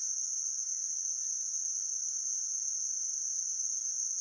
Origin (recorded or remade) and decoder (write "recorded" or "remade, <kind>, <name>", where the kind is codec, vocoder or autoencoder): recorded